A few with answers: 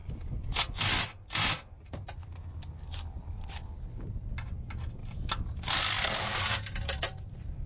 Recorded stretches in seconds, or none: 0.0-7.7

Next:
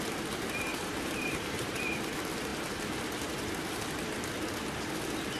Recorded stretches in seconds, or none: 0.0-0.7; 1.7-5.4

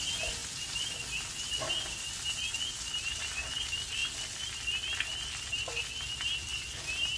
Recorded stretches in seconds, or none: 0.0-7.2

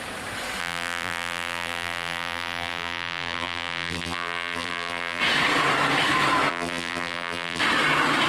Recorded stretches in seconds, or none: 0.0-0.6; 5.2-6.5; 7.6-8.3

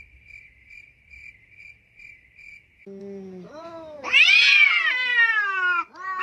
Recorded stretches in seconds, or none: 0.0-6.2

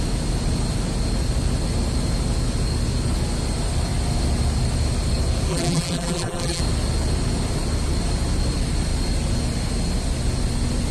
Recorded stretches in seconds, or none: 0.0-5.5; 6.6-10.9

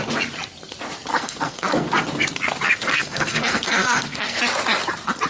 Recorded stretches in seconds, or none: 0.0-1.1; 1.9-2.9; 4.4-5.3

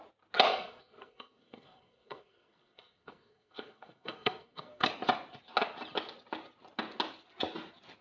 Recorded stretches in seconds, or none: 0.0-0.5; 4.9-8.0